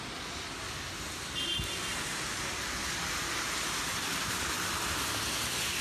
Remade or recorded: recorded